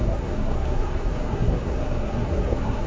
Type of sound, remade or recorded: remade